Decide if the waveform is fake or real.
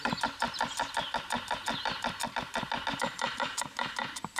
real